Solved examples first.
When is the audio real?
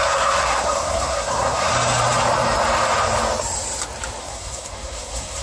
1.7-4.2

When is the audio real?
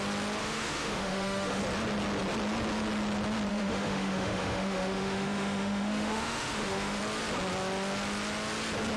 0.0-0.4; 1.6-3.5; 7.0-9.0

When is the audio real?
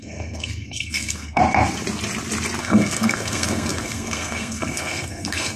1.4-2.6